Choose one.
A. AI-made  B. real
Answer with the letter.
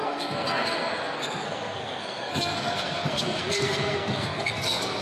A